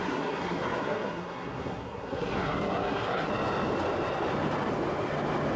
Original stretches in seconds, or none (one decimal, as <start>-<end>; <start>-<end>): 3.3-5.6